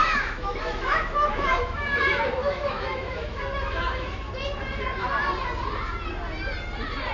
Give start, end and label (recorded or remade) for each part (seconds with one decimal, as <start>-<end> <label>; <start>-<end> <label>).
0.0-4.3 remade; 4.3-7.1 recorded

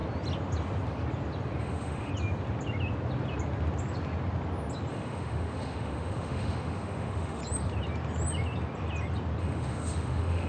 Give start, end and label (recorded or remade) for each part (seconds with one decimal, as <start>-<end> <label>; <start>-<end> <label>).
0.0-1.6 recorded; 1.6-2.1 remade; 2.1-4.9 recorded; 4.9-7.4 remade; 7.4-9.4 recorded; 9.4-10.5 remade